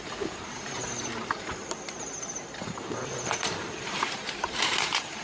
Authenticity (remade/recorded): remade